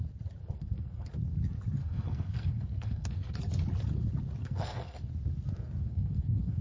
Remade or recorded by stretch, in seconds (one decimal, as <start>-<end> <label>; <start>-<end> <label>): 0.0-0.4 recorded; 0.4-1.1 remade; 1.1-1.8 recorded; 1.8-3.4 remade; 3.4-4.4 recorded; 4.4-5.1 remade; 5.1-5.8 recorded; 5.8-6.6 remade